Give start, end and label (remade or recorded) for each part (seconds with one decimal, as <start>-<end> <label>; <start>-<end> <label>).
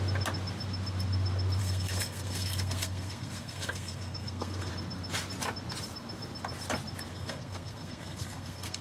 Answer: 0.0-1.6 recorded; 1.6-4.7 remade; 4.7-7.1 recorded; 7.1-8.8 remade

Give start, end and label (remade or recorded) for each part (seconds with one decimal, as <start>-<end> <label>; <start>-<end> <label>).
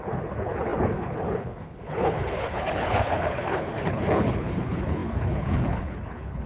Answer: 0.0-6.5 remade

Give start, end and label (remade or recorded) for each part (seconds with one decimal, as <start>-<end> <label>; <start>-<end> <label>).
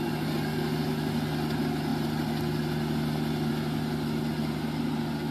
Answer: 0.0-5.3 recorded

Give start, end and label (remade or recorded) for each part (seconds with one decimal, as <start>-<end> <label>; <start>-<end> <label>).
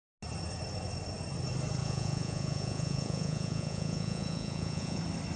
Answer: 0.0-1.8 recorded; 1.8-5.0 remade; 5.0-5.4 recorded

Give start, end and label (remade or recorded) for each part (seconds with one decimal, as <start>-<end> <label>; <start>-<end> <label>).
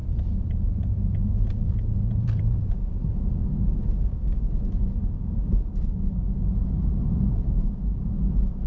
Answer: 0.0-3.4 remade; 3.4-7.3 recorded; 7.3-8.7 remade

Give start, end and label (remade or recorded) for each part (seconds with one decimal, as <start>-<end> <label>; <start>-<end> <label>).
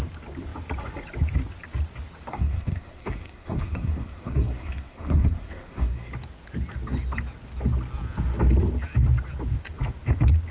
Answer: 0.0-2.3 recorded; 2.3-6.1 remade; 6.1-10.5 recorded